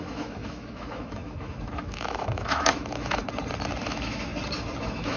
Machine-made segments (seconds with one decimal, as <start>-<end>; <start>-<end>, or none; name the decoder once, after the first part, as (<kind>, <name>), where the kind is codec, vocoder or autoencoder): 0.0-3.2 (autoencoder, DAC-VAE); 3.8-4.3; 4.8-5.2